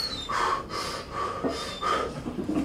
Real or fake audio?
real